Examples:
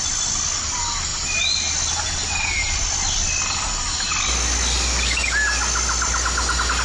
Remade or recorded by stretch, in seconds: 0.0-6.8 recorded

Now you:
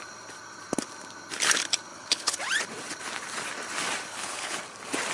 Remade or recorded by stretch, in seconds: 0.0-1.9 recorded; 1.9-2.4 remade; 2.4-4.1 recorded; 4.1-4.6 remade; 4.6-5.1 recorded

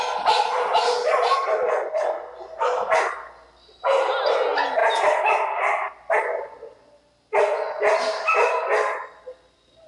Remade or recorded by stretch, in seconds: 0.0-9.9 recorded